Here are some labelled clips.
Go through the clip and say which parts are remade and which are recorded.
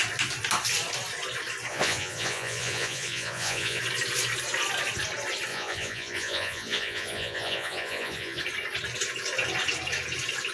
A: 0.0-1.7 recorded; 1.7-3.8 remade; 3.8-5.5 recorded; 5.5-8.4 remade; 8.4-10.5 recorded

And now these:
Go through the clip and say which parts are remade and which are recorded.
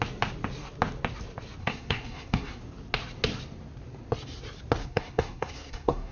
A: 0.0-1.6 recorded; 1.6-2.6 remade; 2.6-4.8 recorded; 4.8-6.1 remade